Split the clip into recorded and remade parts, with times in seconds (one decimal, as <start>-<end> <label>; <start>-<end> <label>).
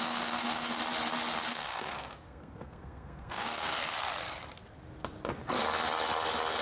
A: 0.0-0.8 remade; 0.8-1.5 recorded; 1.5-3.8 remade; 3.8-6.6 recorded